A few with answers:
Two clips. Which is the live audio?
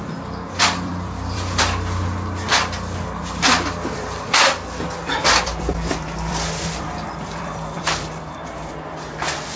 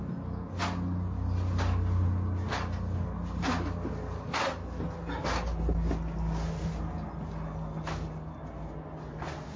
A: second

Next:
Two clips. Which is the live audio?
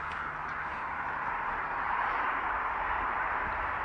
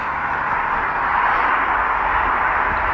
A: second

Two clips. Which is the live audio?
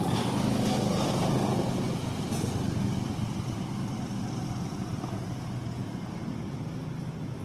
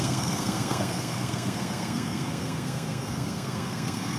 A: first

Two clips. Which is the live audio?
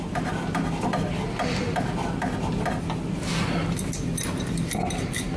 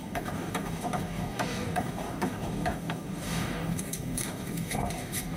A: first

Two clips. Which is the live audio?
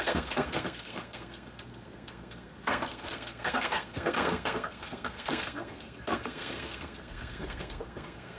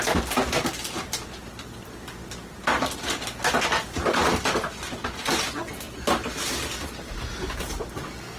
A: second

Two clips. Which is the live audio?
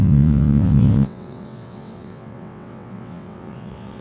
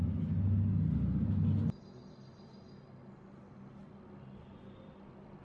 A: second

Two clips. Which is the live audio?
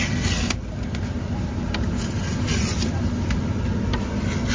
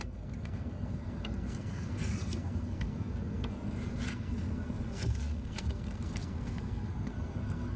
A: first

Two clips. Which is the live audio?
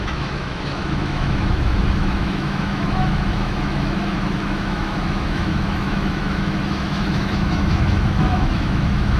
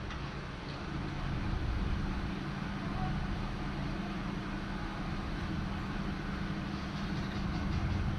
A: second